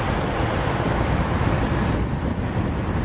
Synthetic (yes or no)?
no